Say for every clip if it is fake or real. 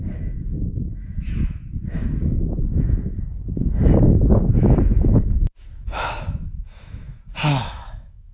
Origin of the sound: fake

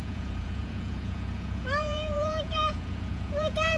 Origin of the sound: fake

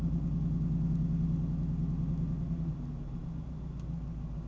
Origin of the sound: real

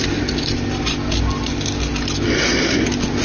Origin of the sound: real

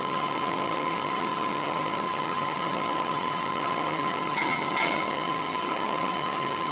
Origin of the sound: fake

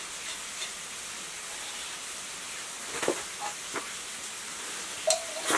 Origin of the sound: real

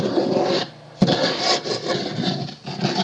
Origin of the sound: real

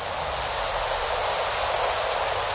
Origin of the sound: real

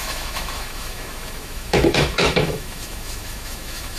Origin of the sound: fake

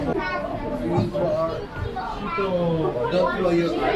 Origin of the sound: real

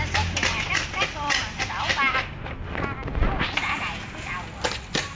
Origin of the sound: real